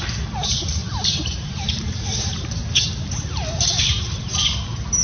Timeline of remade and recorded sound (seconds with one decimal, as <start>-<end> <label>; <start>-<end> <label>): 0.0-2.6 remade; 2.6-3.8 recorded; 3.8-4.2 remade; 4.2-5.0 recorded